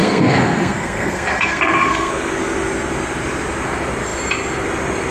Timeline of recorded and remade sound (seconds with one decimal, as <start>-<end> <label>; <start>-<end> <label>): 0.0-2.1 remade; 2.1-5.1 recorded